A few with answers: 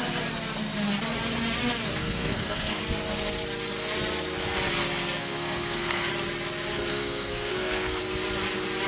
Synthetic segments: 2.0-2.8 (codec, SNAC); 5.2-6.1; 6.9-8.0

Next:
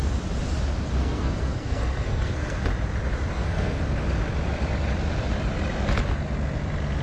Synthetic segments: 1.0-2.6 (codec, SNAC); 3.3-3.8